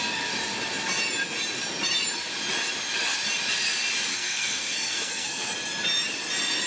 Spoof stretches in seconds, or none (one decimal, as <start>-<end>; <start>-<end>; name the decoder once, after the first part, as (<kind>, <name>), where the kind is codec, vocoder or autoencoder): 4.1-5.5 (codec, SNAC)